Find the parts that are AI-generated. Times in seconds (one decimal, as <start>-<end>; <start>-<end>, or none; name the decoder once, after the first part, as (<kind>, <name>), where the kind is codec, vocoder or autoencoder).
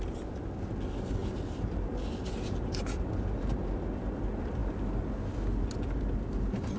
none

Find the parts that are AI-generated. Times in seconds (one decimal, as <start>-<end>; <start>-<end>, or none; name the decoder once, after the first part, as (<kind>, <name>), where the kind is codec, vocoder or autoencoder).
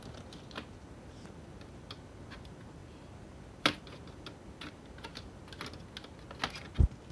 none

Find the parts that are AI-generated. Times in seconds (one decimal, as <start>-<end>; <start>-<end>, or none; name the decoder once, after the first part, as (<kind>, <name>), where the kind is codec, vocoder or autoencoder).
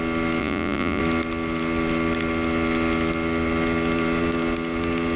0.4-1.0 (vocoder, Vocos)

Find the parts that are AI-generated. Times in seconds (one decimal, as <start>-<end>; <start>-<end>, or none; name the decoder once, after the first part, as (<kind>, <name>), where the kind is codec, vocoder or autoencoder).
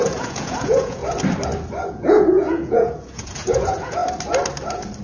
0.0-1.0 (vocoder, Vocos); 1.9-4.0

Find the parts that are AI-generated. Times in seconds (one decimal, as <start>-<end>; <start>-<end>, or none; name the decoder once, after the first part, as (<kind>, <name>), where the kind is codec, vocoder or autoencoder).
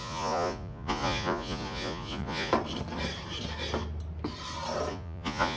0.0-2.5 (vocoder, Vocos); 4.9-5.6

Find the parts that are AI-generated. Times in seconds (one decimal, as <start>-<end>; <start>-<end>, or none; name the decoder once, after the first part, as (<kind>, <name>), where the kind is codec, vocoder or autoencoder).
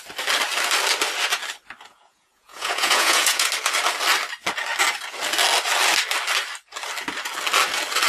1.9-3.5 (vocoder, Vocos)